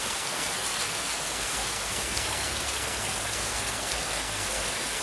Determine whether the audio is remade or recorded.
remade